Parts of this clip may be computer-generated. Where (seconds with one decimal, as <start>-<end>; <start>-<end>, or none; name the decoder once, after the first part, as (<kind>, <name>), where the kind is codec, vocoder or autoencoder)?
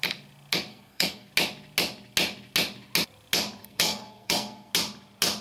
0.7-1.3 (codec, SNAC); 3.6-4.7